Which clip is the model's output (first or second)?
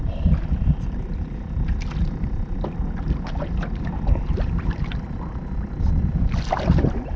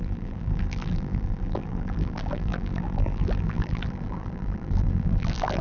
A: second